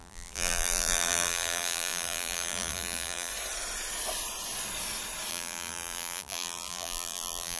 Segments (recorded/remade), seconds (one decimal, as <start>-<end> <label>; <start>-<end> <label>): 0.0-3.3 remade; 3.3-5.3 recorded; 5.3-7.6 remade